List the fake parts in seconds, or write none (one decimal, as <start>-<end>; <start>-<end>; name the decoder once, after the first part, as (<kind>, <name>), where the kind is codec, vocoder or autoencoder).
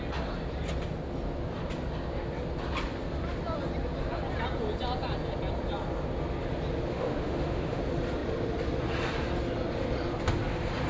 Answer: 6.9-7.8 (autoencoder, DAC-VAE)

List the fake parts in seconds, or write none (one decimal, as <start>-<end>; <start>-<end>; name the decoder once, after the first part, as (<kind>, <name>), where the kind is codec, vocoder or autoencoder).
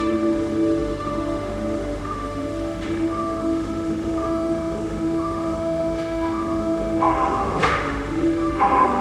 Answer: 0.0-9.0 (autoencoder, DAC-VAE)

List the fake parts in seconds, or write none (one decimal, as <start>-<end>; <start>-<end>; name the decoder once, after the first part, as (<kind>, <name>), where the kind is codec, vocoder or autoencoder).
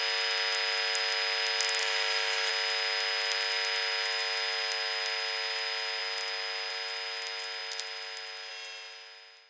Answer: 1.8-2.5 (autoencoder, DAC-VAE)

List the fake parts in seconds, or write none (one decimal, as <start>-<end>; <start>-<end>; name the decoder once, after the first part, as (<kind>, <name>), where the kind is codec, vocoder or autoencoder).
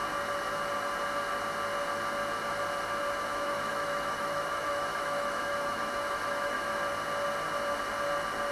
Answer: 3.3-6.9 (autoencoder, DAC-VAE)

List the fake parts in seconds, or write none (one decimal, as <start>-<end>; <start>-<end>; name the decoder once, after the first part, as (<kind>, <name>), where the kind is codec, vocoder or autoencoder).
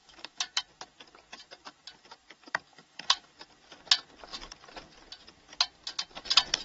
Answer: 0.0-0.6 (autoencoder, DAC-VAE); 2.7-3.3